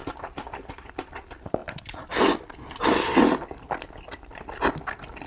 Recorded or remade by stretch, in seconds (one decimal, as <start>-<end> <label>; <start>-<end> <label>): 0.0-5.3 recorded